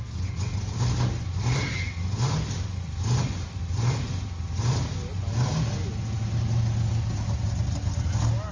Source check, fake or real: real